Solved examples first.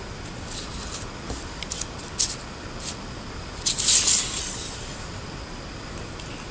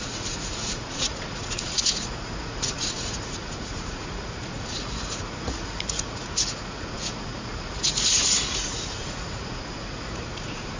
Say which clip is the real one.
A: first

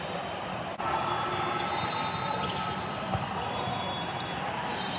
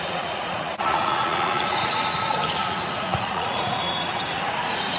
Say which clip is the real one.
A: first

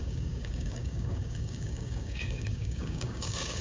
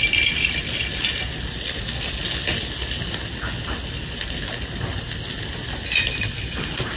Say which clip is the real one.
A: second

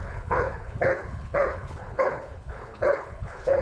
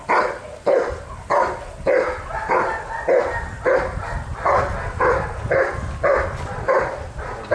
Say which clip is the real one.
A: second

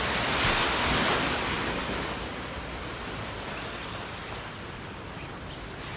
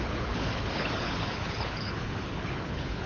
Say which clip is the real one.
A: first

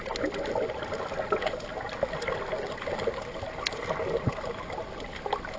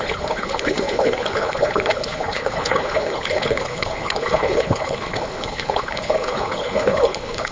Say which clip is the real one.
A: first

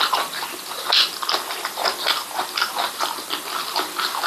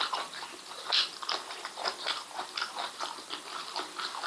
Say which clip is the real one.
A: first